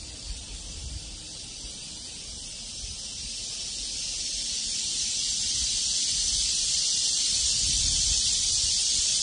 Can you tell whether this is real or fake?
real